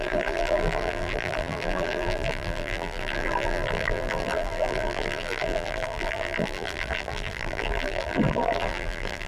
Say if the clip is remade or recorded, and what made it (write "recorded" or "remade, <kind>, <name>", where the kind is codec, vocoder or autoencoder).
remade, vocoder, BigVGAN v2